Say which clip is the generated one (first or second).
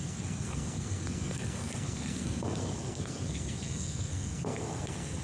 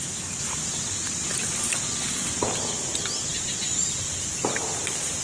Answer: first